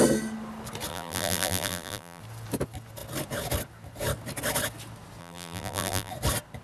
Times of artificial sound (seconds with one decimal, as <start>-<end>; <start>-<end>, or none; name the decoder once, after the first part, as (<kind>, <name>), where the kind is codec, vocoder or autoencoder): 0.9-2.2 (vocoder, BigVGAN v2); 5.2-6.1